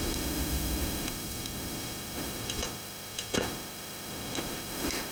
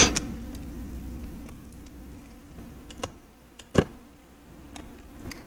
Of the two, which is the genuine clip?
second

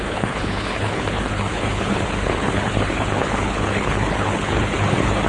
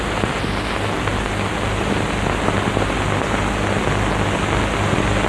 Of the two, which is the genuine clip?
second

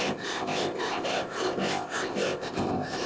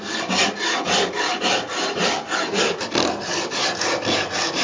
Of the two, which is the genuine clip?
second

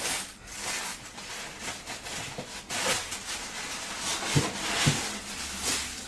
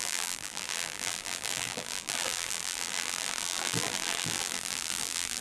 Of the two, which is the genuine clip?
first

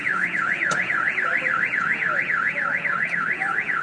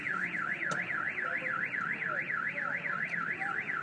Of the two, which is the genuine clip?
second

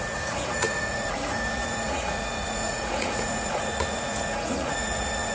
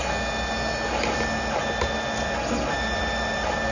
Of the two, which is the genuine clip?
second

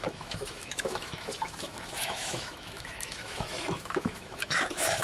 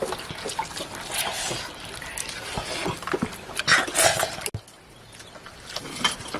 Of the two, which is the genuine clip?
second